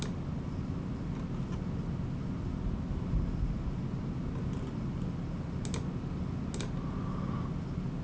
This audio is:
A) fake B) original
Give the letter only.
B